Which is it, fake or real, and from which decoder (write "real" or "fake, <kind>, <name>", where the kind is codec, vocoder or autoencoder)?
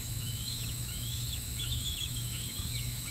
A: fake, autoencoder, DAC-VAE